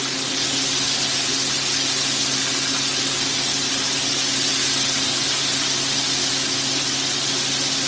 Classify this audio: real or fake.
real